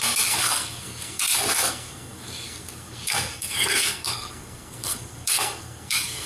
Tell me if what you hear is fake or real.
fake